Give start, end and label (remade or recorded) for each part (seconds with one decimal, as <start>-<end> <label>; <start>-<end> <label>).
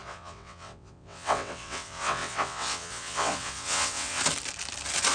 0.0-4.2 remade; 4.2-5.1 recorded